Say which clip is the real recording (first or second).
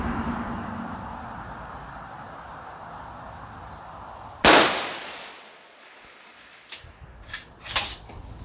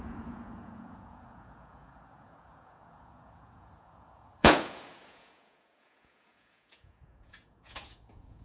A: first